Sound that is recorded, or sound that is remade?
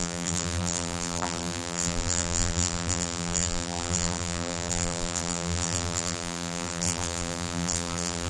remade